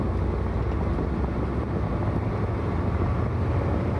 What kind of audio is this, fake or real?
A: real